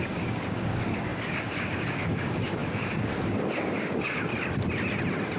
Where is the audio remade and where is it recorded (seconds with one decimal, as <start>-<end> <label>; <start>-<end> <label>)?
0.0-4.3 remade; 4.3-5.4 recorded